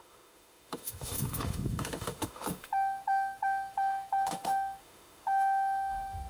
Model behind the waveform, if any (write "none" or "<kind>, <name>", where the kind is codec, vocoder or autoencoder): autoencoder, DAC-VAE